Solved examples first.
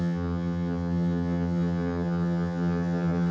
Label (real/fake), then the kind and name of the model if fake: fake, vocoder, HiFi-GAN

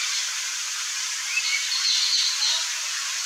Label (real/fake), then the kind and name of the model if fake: real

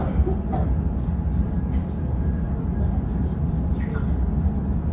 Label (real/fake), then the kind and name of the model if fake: real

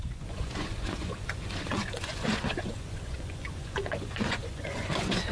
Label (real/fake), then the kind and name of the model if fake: fake, vocoder, Vocos